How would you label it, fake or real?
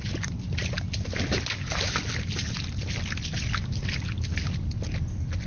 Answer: real